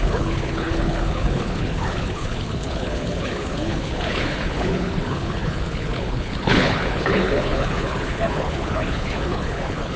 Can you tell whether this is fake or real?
fake